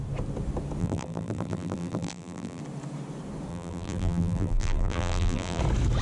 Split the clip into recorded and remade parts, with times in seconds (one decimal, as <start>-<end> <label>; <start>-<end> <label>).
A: 0.0-0.8 recorded; 0.8-2.6 remade; 2.6-3.5 recorded; 3.5-5.6 remade; 5.6-6.0 recorded

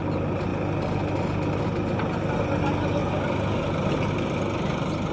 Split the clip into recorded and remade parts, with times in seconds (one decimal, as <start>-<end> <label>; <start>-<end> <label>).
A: 0.0-5.1 recorded